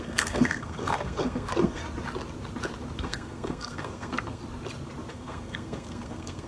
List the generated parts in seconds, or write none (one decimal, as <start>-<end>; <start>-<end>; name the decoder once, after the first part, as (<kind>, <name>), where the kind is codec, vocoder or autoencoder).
0.0-1.8 (codec, SNAC); 3.0-4.4; 5.1-6.5